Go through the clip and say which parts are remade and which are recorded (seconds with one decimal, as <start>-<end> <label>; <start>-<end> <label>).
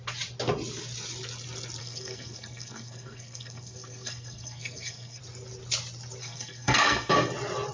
0.0-1.8 recorded; 1.8-5.2 remade; 5.2-6.2 recorded; 6.2-7.1 remade; 7.1-7.7 recorded